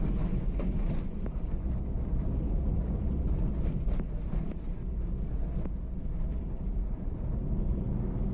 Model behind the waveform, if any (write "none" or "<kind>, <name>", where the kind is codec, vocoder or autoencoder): none